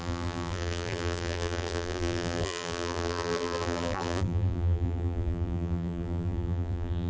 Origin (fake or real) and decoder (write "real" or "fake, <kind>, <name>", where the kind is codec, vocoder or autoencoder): fake, vocoder, BigVGAN v2